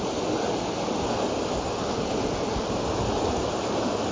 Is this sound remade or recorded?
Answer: recorded